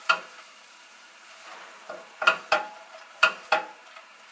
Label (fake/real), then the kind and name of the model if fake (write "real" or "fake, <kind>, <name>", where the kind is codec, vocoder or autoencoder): fake, vocoder, BigVGAN v2